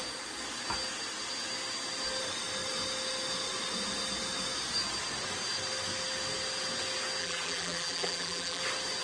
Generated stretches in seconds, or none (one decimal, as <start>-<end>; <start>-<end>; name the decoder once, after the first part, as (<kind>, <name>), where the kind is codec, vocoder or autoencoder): 7.2-8.6 (vocoder, BigVGAN v2)

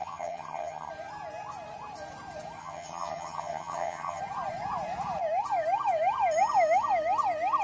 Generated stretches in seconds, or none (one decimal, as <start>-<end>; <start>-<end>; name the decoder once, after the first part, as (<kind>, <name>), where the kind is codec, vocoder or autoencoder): 0.0-0.9 (vocoder, HiFi-GAN); 2.6-4.2

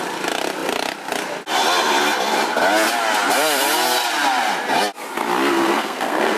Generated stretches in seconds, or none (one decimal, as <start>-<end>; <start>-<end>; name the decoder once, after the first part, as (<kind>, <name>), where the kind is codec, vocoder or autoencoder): 5.5-6.4 (codec, SNAC)

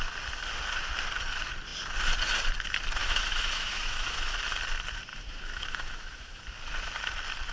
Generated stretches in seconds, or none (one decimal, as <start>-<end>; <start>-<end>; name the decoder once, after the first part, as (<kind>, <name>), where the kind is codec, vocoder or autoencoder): 3.0-4.3 (autoencoder, DAC-VAE); 5.1-6.4

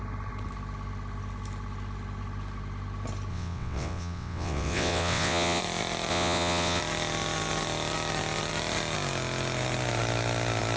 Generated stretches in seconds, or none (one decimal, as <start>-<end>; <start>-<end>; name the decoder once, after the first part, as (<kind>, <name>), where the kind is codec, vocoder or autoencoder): 3.3-5.6 (vocoder, WaveNeXt); 6.1-6.8

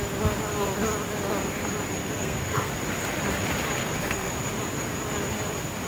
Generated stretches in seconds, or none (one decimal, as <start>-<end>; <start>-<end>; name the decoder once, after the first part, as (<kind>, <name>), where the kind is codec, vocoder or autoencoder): 2.0-2.7 (codec, SNAC); 3.8-4.3